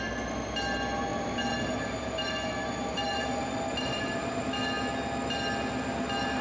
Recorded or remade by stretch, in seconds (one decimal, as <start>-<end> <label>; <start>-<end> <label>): 0.0-1.1 recorded; 1.1-4.4 remade; 4.4-6.4 recorded